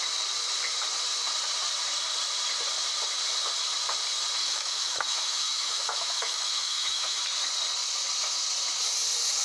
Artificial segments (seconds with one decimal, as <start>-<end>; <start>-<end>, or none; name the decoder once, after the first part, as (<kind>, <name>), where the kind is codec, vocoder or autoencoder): 4.4-7.2 (autoencoder, DAC-VAE)